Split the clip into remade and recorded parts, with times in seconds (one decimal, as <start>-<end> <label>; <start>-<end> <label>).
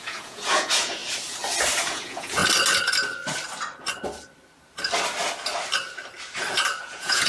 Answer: 0.0-1.0 remade; 1.0-1.8 recorded; 1.8-2.4 remade; 2.4-6.8 recorded; 6.8-7.3 remade